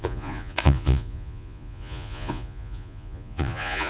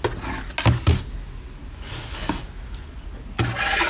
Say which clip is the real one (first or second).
second